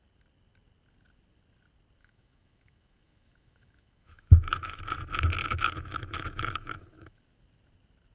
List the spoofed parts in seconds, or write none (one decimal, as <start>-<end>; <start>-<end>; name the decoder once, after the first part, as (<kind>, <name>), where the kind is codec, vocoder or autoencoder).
2.0-4.8 (autoencoder, DAC-VAE); 5.4-7.2